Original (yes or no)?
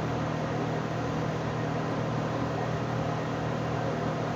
yes